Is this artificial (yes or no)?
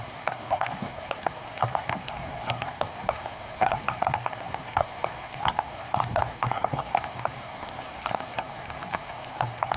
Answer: yes